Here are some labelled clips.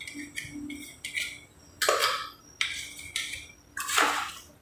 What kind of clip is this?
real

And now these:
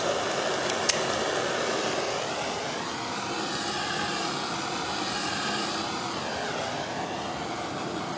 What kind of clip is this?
real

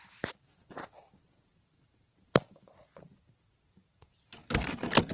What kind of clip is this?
fake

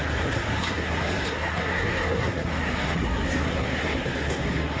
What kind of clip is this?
fake